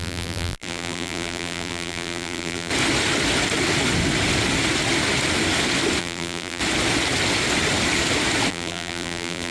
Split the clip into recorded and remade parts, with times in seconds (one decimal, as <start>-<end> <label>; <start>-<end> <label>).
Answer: 0.0-2.7 remade; 2.7-6.0 recorded; 6.0-6.6 remade; 6.6-8.5 recorded; 8.5-9.5 remade

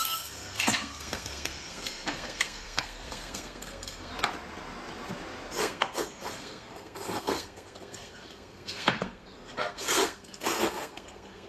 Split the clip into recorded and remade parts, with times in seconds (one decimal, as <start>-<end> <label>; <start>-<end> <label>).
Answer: 0.0-4.1 remade; 4.1-5.6 recorded; 5.6-11.5 remade

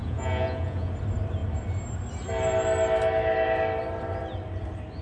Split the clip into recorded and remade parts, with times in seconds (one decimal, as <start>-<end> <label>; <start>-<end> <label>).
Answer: 0.0-0.9 remade; 0.9-5.0 recorded

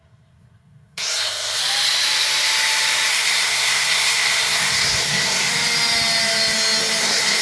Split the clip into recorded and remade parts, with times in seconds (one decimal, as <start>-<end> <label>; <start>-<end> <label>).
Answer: 0.0-1.6 remade; 1.6-3.1 recorded; 3.1-5.5 remade; 5.5-7.0 recorded; 7.0-7.4 remade

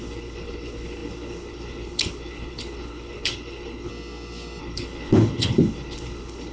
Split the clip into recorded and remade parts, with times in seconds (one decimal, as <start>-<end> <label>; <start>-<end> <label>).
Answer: 0.0-3.9 remade; 3.9-4.6 recorded; 4.6-6.5 remade

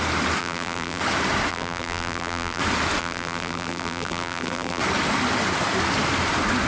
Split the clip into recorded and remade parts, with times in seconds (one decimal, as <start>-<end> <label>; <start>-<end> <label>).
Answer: 0.0-0.4 recorded; 0.4-1.0 remade; 1.0-1.5 recorded; 1.5-2.6 remade; 2.6-3.0 recorded; 3.0-4.8 remade; 4.8-6.7 recorded

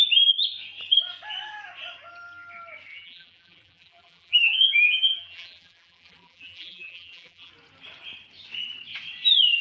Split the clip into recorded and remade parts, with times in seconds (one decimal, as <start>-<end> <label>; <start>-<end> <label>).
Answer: 0.0-2.9 recorded; 2.9-7.5 remade; 7.5-9.6 recorded